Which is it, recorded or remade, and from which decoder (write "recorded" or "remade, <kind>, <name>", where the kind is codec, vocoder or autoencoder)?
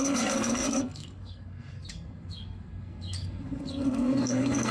remade, codec, SNAC